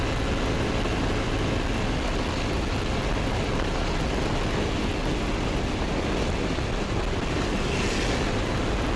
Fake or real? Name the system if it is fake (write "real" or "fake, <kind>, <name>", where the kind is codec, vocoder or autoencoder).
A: real